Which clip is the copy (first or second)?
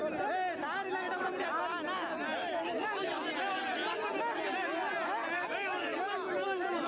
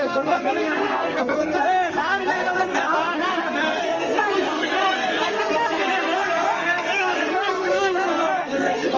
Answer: second